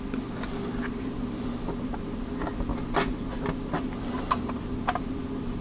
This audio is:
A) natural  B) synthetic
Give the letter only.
A